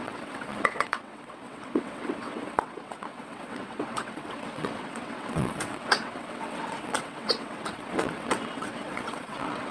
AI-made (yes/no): yes